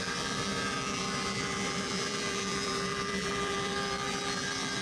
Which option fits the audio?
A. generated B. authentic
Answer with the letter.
A